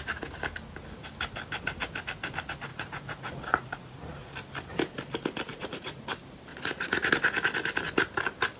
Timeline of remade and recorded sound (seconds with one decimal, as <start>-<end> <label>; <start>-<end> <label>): 0.0-2.7 recorded; 2.7-4.3 remade; 4.3-5.5 recorded; 5.5-6.0 remade; 6.0-6.5 recorded; 6.5-7.1 remade; 7.1-8.6 recorded

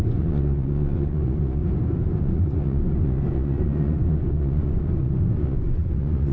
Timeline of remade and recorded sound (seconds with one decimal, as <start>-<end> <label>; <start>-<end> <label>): 0.0-1.6 remade; 1.6-2.2 recorded; 2.2-6.3 remade

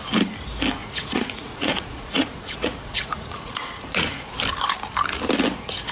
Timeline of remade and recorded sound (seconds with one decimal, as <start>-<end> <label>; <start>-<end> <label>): 0.0-0.8 recorded; 0.8-4.3 remade; 4.3-5.9 recorded